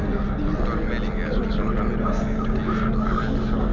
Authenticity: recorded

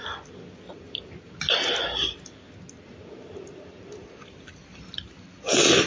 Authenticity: recorded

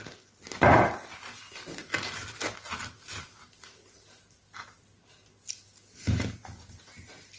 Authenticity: recorded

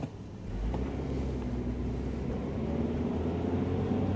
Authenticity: recorded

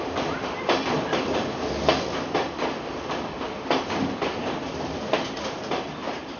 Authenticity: remade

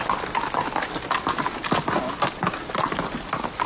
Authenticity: recorded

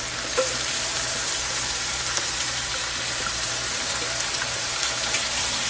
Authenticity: remade